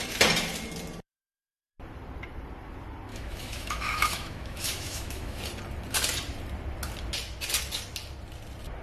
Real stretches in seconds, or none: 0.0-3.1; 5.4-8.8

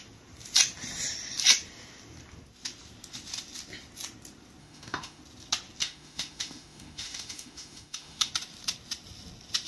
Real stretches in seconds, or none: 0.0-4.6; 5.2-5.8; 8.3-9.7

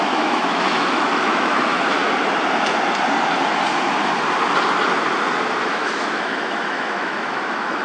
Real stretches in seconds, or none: 2.0-5.7

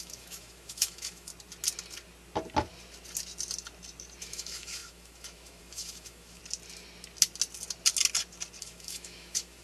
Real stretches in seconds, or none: 1.3-4.2; 6.4-8.6

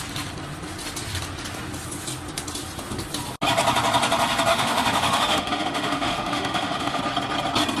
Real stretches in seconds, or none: 0.0-4.5; 7.0-7.8

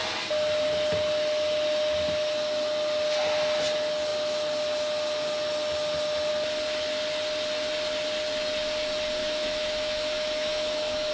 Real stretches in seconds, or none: 0.0-9.2